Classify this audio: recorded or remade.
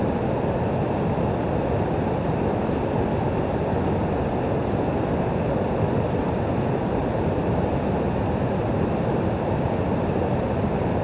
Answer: recorded